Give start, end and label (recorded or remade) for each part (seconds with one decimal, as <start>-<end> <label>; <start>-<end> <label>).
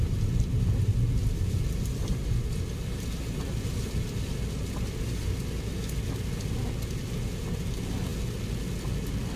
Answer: 0.0-9.4 recorded